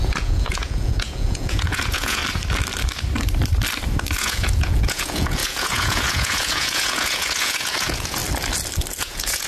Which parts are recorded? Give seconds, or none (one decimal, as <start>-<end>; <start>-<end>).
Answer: 2.2-4.2; 8.2-9.0